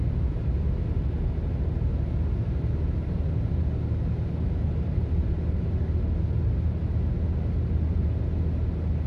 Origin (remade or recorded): recorded